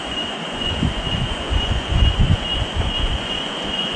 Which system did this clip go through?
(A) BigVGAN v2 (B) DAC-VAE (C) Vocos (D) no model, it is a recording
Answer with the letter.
C